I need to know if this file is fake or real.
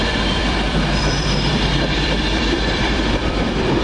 fake